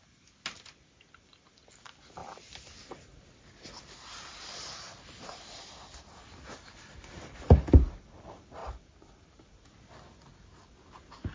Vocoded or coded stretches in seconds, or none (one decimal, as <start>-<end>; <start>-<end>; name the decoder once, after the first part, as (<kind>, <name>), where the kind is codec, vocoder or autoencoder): 8.6-9.8 (vocoder, BigVGAN v2); 10.3-11.3